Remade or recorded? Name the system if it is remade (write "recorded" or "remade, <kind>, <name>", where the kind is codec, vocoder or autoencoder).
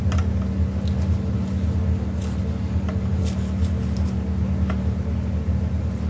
recorded